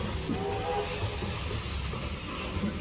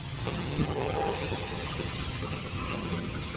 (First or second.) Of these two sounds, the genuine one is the first